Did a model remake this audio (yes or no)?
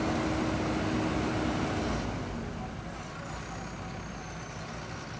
no